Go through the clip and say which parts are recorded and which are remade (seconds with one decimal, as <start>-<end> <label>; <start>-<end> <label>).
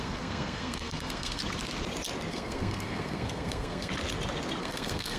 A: 0.0-1.4 remade; 1.4-2.3 recorded; 2.3-3.9 remade; 3.9-4.6 recorded; 4.6-5.2 remade